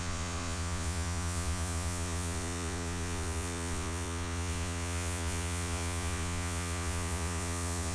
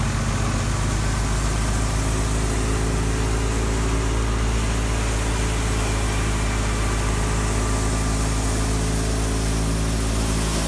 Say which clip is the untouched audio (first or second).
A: second